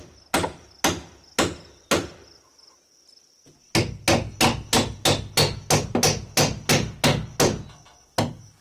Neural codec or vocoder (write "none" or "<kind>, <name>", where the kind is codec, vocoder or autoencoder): none